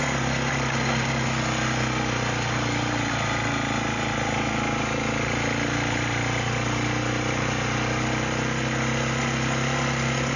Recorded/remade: recorded